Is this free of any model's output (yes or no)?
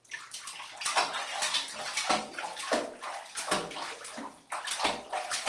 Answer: yes